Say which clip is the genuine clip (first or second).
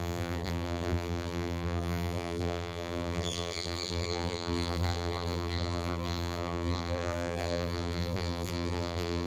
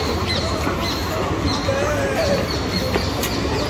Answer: second